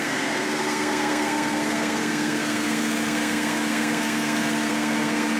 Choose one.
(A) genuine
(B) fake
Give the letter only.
B